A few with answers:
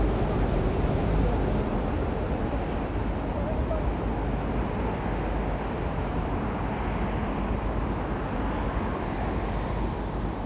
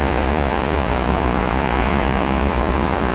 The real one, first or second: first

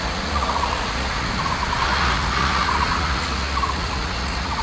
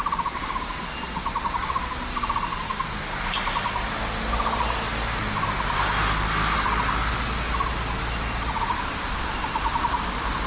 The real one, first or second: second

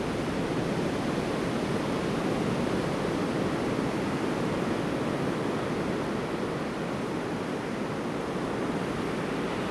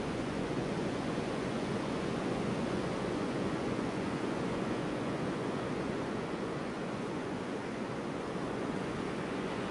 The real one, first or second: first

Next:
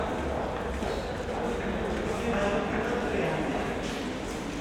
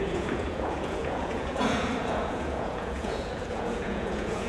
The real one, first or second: first